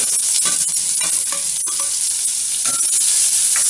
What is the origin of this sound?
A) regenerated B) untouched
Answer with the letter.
B